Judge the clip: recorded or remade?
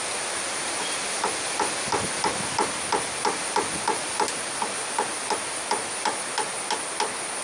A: recorded